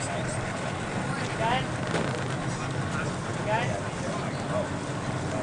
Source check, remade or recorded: recorded